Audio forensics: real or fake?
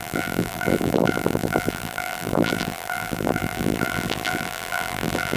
fake